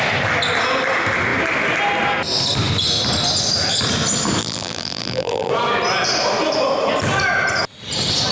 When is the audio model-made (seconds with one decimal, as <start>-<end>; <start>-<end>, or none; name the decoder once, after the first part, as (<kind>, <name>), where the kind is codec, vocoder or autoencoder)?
4.4-5.5 (vocoder, BigVGAN v2)